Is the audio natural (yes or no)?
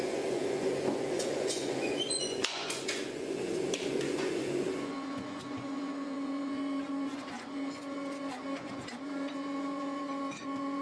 no